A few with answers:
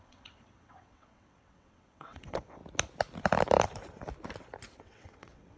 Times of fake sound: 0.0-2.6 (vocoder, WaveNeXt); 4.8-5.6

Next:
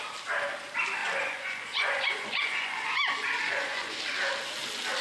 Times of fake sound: 1.0-4.0 (vocoder, Vocos)